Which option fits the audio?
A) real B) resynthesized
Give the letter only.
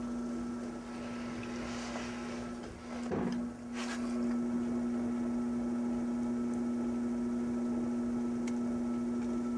A